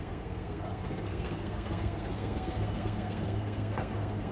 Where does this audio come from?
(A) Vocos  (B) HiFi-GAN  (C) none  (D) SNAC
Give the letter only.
D